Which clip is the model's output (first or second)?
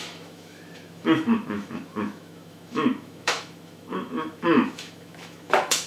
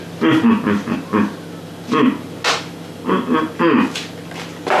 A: first